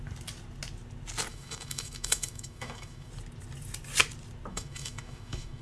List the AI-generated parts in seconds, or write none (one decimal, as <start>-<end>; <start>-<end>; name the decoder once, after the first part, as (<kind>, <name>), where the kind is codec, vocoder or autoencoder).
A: 1.3-3.1 (autoencoder, DAC-VAE); 4.5-5.6